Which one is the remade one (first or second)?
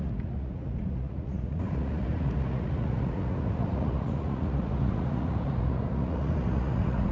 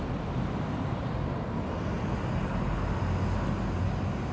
first